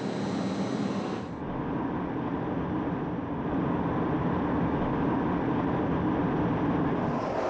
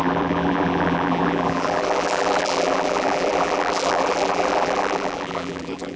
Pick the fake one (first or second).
second